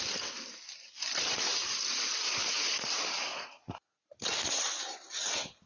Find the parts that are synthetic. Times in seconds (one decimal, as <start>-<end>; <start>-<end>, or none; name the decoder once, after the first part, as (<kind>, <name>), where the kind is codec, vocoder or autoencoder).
none